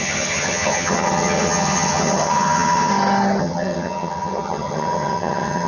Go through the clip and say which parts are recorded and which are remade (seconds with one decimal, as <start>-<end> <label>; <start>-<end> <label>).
0.0-2.9 remade; 2.9-3.4 recorded; 3.4-5.7 remade